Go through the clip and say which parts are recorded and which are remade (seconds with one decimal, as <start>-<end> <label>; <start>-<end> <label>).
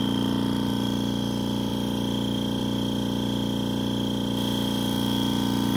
0.0-5.8 recorded